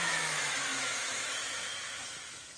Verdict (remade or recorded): remade